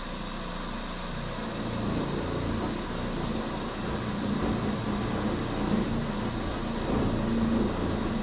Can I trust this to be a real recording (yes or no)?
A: yes